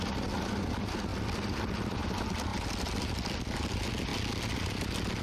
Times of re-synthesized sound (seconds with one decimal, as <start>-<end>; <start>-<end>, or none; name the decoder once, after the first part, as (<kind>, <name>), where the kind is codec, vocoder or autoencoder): none